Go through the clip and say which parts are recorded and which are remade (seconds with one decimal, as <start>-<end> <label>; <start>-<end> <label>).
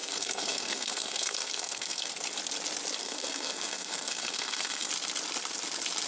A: 0.0-2.1 remade; 2.1-3.0 recorded; 3.0-4.9 remade; 4.9-6.1 recorded